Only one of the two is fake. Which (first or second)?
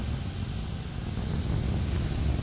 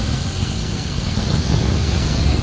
second